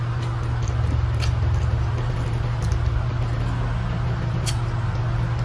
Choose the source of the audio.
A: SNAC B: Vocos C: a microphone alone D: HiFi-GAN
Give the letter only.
C